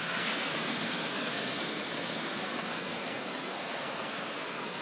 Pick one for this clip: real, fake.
fake